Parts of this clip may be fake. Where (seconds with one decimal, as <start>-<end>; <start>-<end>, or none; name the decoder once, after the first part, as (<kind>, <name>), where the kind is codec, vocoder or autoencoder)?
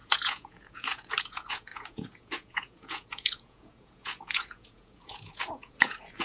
0.0-6.2 (vocoder, Vocos)